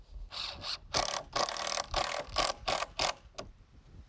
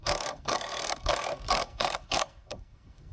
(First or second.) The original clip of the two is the first